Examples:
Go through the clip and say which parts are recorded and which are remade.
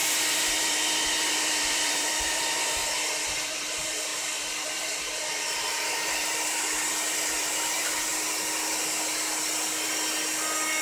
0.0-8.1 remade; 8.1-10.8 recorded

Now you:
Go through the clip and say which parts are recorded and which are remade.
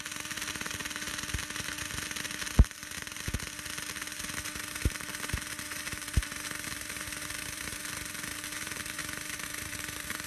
0.0-0.8 remade; 0.8-6.0 recorded; 6.0-7.8 remade; 7.8-8.6 recorded; 8.6-10.3 remade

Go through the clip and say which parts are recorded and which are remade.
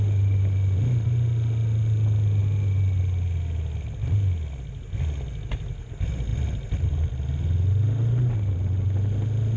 0.0-9.6 recorded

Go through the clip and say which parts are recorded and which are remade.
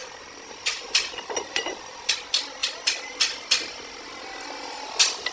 0.0-2.1 remade; 2.1-5.3 recorded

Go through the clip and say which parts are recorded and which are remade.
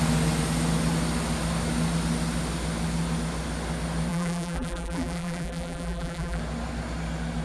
0.0-4.1 recorded; 4.1-6.4 remade; 6.4-7.4 recorded